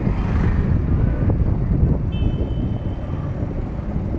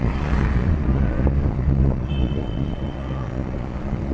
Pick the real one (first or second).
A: first